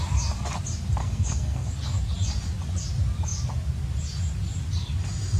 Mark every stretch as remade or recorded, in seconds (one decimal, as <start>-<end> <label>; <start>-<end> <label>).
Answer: 0.0-1.0 recorded; 1.0-1.7 remade; 1.7-5.4 recorded